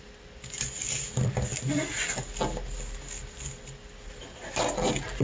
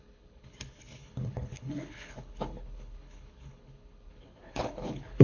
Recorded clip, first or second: first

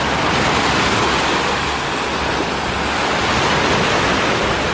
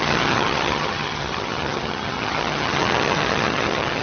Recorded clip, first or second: first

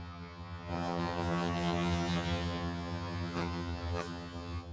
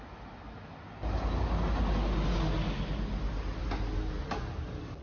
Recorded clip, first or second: second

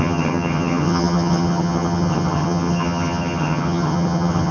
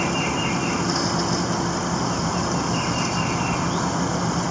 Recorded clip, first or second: second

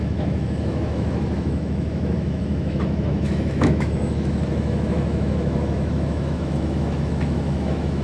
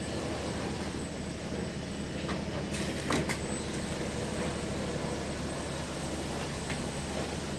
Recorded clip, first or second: second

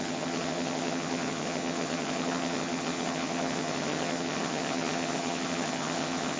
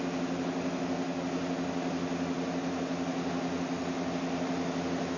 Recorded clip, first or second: second